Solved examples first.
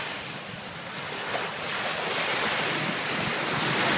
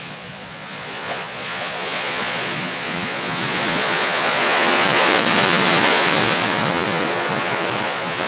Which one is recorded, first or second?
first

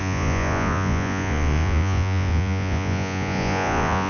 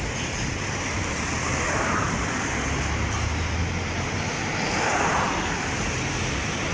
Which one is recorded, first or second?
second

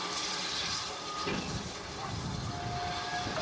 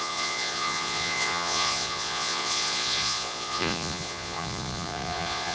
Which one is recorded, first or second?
first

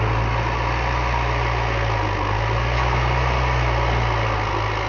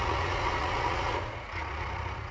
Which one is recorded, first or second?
first